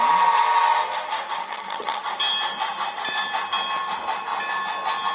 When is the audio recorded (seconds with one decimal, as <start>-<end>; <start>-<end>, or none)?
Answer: 0.0-1.4; 2.0-5.1